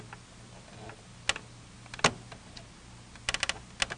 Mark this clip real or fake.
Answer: real